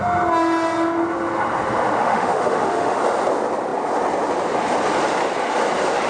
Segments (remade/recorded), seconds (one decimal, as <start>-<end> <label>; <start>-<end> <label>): 0.0-2.0 recorded; 2.0-3.0 remade; 3.0-6.1 recorded